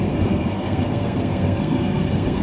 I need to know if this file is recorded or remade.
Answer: remade